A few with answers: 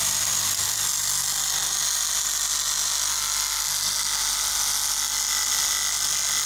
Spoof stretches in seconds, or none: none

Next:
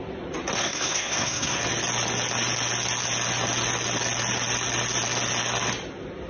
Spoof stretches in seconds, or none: 0.6-1.6 (codec, SNAC)

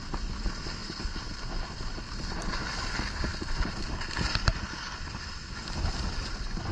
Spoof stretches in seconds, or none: none

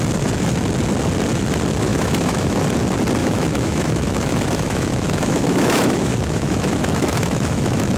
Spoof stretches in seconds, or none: 1.9-2.6 (autoencoder, DAC-VAE); 3.2-8.0

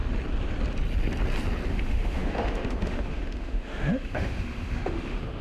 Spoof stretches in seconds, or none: 1.7-5.4 (autoencoder, DAC-VAE)